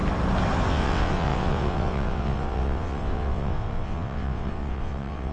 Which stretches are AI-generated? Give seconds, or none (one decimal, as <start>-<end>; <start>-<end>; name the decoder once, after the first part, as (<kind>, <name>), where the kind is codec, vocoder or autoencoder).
0.7-5.3 (vocoder, WaveNeXt)